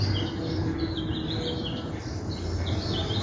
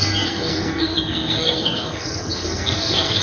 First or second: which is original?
first